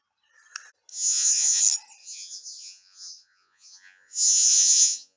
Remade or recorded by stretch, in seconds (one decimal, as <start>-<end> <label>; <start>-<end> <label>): 0.0-0.9 recorded; 0.9-1.6 remade; 1.6-2.0 recorded; 2.0-5.2 remade